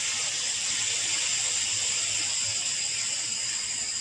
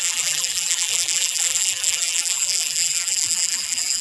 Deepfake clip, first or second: second